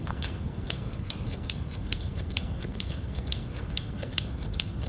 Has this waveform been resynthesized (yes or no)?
yes